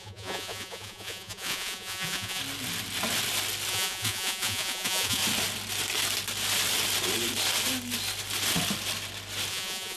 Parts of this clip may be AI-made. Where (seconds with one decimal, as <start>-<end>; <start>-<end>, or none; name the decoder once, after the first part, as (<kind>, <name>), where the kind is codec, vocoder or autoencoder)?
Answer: 0.0-2.4 (vocoder, Vocos); 3.7-5.2; 9.5-10.0